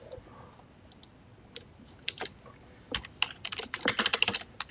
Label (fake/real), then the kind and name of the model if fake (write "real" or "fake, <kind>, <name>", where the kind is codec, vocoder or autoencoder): real